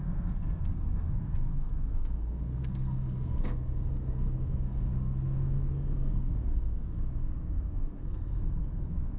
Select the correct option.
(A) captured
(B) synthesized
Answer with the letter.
B